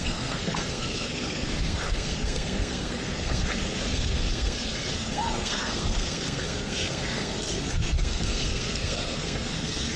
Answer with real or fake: fake